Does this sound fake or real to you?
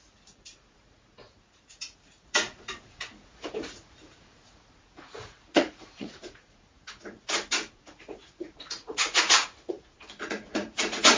fake